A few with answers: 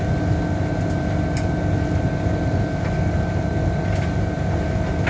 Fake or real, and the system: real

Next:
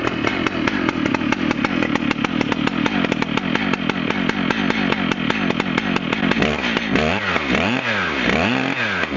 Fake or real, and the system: real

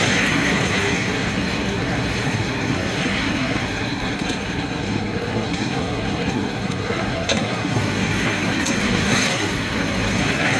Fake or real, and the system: fake, codec, SNAC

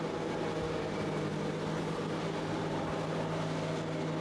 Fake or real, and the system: real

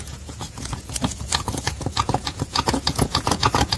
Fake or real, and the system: fake, vocoder, Vocos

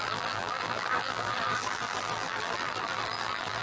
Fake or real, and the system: fake, vocoder, BigVGAN v2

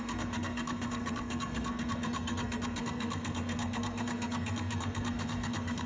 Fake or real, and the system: fake, codec, SNAC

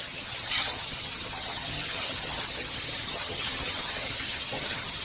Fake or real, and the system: fake, vocoder, HiFi-GAN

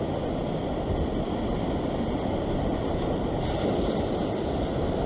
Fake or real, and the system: real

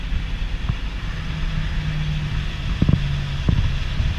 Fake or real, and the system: real